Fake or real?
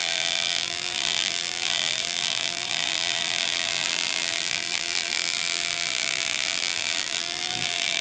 fake